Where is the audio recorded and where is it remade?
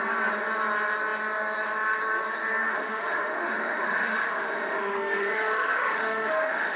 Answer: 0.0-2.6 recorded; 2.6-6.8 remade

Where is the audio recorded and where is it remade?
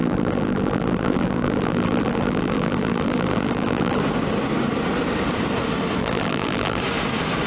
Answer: 0.0-4.0 remade; 4.0-6.0 recorded; 6.0-6.8 remade; 6.8-7.5 recorded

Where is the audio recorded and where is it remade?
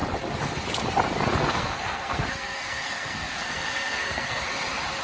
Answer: 0.0-1.4 recorded; 1.4-4.4 remade; 4.4-5.0 recorded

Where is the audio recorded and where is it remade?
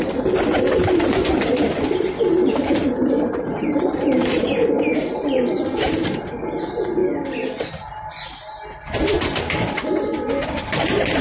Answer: 0.0-2.8 recorded; 2.8-6.2 remade; 6.2-11.2 recorded